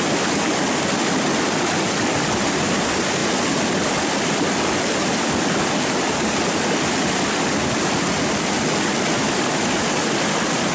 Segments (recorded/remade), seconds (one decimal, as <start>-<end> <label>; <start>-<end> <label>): 0.0-10.7 recorded